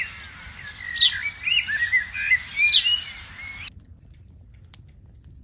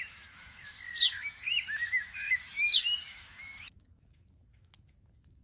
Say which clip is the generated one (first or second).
second